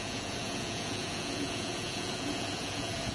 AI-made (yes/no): yes